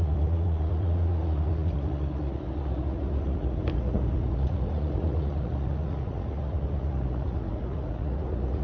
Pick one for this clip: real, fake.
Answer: fake